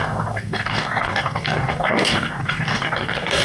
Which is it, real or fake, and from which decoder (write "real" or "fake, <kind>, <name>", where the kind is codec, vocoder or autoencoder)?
fake, codec, DAC